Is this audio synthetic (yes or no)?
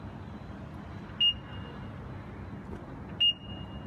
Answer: no